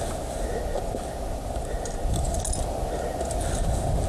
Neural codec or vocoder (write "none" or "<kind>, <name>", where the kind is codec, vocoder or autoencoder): none